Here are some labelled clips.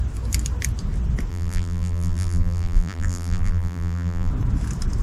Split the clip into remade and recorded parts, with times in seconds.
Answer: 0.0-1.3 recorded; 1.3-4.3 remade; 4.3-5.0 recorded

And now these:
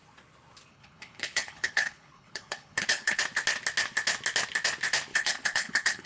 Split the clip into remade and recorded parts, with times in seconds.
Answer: 0.0-0.7 recorded; 0.7-3.2 remade; 3.2-5.1 recorded; 5.1-6.1 remade